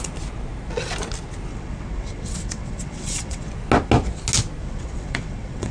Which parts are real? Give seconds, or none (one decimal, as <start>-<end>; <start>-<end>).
0.0-1.5; 3.5-4.6